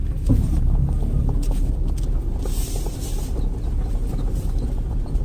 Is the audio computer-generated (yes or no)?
no